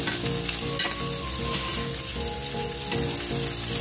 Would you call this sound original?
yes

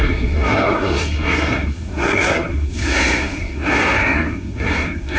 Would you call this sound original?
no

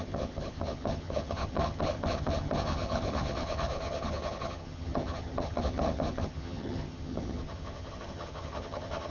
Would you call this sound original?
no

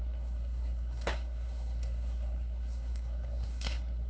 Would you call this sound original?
no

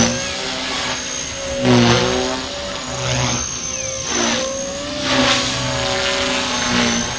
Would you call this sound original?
yes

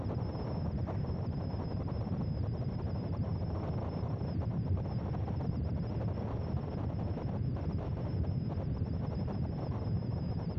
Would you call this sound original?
yes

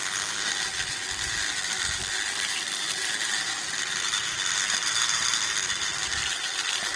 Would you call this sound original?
yes